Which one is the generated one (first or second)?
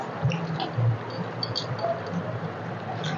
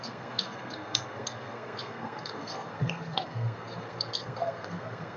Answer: second